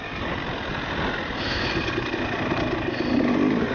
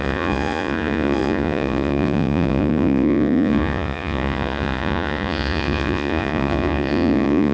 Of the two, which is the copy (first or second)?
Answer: second